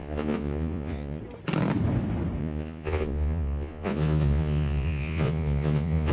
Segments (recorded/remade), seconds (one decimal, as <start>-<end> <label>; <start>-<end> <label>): 0.0-1.2 remade; 1.2-2.4 recorded; 2.4-6.1 remade